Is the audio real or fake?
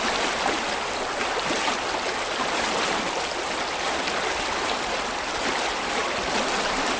real